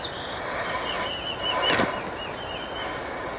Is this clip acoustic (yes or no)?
yes